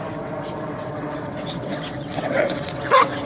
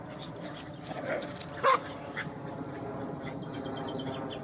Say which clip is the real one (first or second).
second